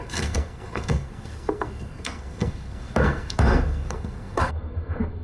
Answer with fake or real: fake